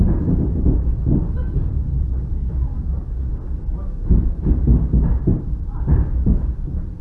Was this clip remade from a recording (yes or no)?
no